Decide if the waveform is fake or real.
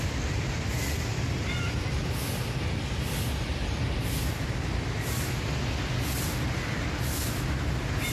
real